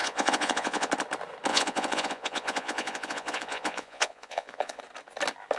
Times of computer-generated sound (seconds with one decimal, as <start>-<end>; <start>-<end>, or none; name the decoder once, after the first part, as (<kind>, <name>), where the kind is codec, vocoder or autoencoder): 0.0-0.9 (vocoder, Vocos); 1.5-4.8